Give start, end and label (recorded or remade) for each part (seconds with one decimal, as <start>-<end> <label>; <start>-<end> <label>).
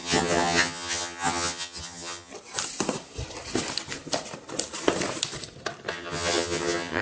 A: 0.0-2.3 remade; 2.3-5.9 recorded; 5.9-7.0 remade